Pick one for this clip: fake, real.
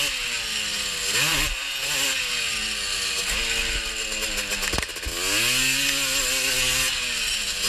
real